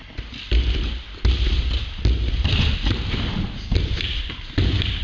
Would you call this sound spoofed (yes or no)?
yes